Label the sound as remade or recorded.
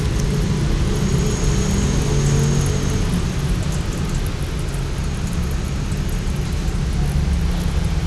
recorded